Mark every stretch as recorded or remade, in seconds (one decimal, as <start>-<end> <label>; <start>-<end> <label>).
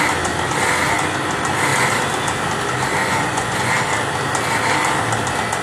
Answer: 0.0-3.0 recorded; 3.0-3.7 remade; 3.7-5.6 recorded